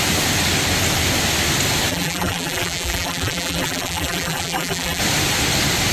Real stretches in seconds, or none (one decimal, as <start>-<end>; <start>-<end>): 0.0-1.9; 5.0-5.9